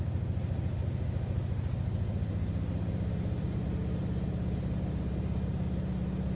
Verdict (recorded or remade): recorded